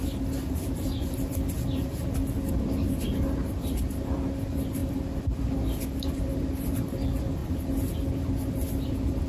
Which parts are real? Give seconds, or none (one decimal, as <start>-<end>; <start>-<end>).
0.0-9.3